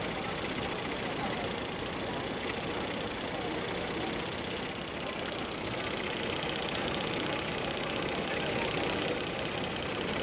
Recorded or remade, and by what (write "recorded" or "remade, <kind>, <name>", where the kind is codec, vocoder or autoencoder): recorded